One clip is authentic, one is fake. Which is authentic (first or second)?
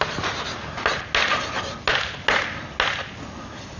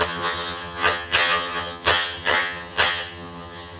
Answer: first